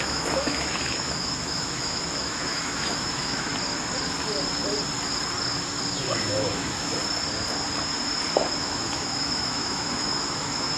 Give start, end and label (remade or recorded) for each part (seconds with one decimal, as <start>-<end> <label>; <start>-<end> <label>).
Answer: 0.0-3.5 remade; 3.5-6.0 recorded; 6.0-7.0 remade; 7.0-8.6 recorded; 8.6-10.8 remade